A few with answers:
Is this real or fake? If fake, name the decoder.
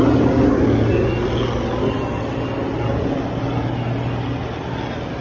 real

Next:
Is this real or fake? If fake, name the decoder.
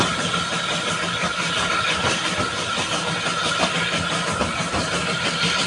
real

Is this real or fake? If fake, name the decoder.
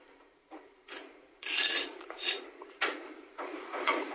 fake, vocoder, Vocos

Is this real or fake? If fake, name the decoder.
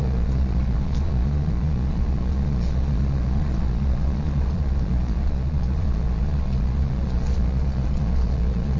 fake, vocoder, Vocos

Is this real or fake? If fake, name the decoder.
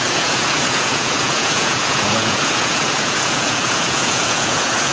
fake, vocoder, Vocos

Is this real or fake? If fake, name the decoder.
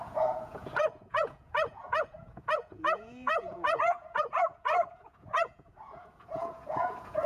fake, vocoder, Vocos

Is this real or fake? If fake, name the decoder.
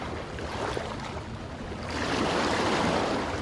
real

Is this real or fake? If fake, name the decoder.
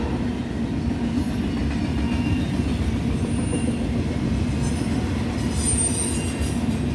real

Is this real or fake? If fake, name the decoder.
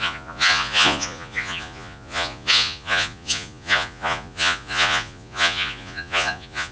fake, vocoder, Vocos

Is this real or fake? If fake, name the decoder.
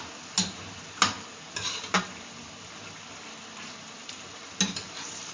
real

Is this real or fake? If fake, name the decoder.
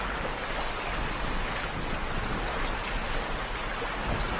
real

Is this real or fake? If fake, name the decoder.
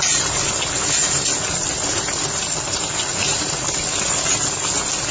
real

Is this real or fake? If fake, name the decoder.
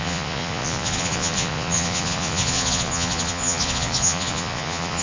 fake, vocoder, Vocos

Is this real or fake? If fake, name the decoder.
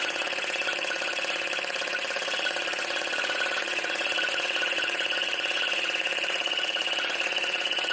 fake, vocoder, Vocos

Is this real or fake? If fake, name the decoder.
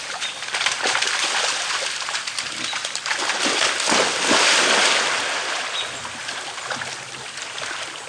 real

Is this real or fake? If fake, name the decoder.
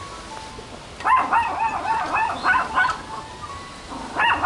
real